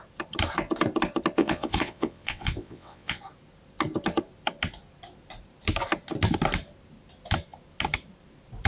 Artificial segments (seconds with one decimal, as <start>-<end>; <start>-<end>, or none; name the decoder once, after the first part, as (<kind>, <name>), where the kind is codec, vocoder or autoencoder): 1.4-3.2 (vocoder, WaveNeXt)